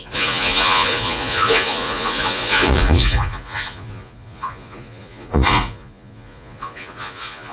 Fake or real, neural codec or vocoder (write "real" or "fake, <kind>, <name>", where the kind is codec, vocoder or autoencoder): fake, vocoder, Vocos